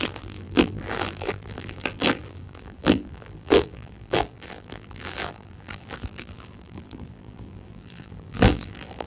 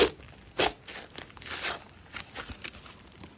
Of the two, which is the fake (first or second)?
first